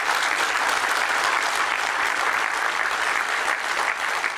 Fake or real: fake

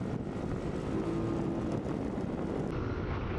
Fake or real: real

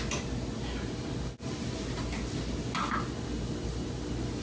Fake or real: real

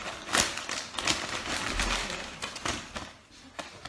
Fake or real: fake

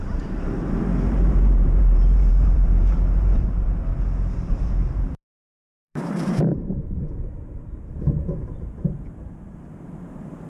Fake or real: fake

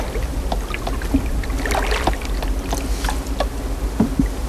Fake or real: real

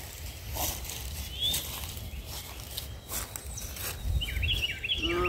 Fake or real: real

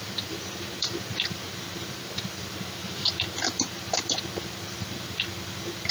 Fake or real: fake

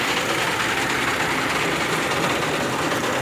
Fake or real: fake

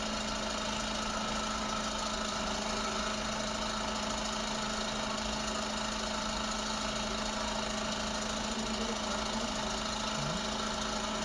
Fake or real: real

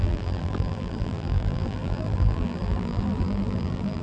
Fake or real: fake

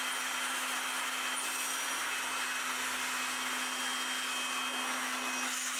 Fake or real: real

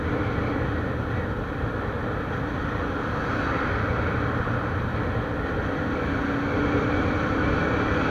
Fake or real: real